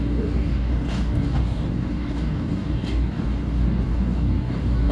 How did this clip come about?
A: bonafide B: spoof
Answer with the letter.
B